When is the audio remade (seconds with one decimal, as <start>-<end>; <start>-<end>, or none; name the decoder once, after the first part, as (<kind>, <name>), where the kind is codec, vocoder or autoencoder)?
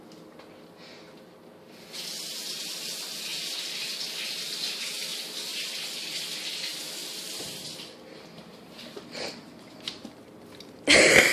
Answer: 5.5-9.3 (vocoder, BigVGAN v2)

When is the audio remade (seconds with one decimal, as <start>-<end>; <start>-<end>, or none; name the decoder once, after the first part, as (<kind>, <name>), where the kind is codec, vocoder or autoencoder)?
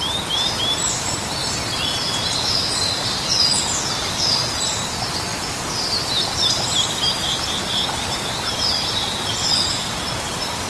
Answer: 5.3-6.1 (vocoder, BigVGAN v2)